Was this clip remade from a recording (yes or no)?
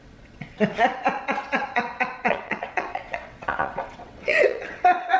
yes